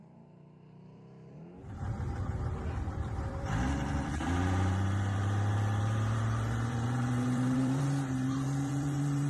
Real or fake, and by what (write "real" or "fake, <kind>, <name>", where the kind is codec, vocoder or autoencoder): fake, vocoder, BigVGAN v2